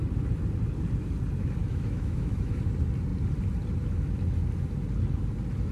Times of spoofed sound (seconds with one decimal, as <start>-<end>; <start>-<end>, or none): 1.6-2.6